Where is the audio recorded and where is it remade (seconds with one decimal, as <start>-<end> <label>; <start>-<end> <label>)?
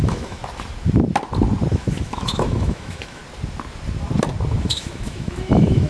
0.0-0.4 remade; 0.4-1.7 recorded; 1.7-3.2 remade; 3.2-4.6 recorded; 4.6-5.9 remade